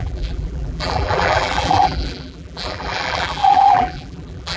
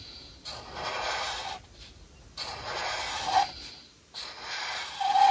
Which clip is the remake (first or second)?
first